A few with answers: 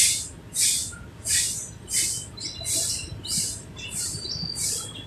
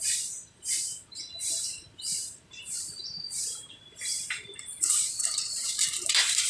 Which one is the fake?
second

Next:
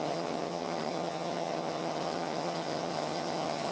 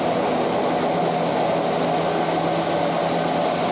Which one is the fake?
first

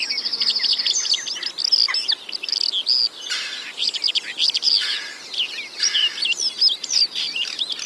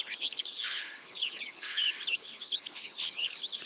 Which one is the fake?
second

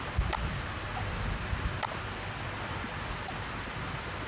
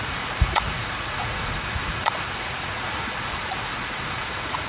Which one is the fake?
second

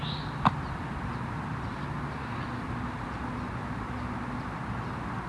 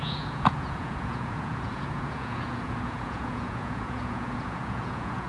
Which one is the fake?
second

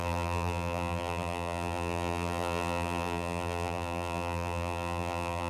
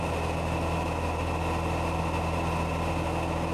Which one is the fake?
first